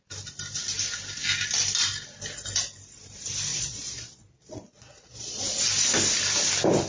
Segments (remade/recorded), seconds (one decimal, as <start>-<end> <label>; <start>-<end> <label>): 0.0-3.5 recorded; 3.5-5.4 remade; 5.4-6.9 recorded